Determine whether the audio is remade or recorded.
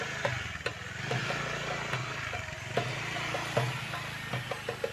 recorded